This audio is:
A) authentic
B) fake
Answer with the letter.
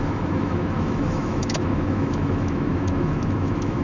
B